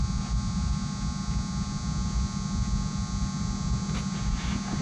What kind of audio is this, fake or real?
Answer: real